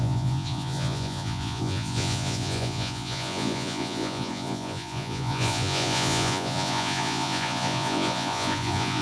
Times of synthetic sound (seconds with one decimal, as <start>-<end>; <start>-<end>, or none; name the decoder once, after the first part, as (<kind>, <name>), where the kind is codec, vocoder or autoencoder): 0.0-9.0 (vocoder, Vocos)